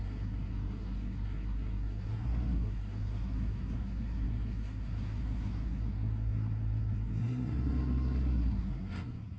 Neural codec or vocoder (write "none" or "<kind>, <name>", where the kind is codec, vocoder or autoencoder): codec, SNAC